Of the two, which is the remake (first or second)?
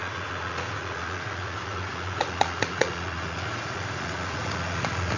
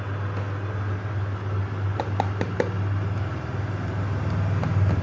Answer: first